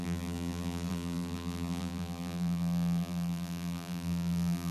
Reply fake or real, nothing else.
fake